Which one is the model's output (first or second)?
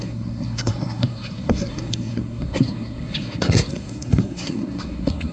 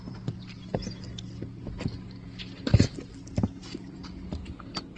first